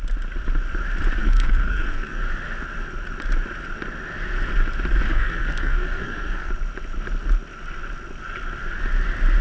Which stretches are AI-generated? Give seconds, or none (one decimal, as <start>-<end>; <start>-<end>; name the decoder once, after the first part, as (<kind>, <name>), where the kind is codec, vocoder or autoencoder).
1.2-2.2 (codec, SNAC); 5.1-6.5